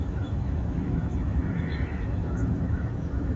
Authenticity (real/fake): fake